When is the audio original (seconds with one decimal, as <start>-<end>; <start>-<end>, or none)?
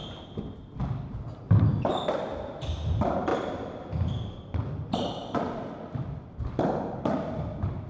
0.0-7.9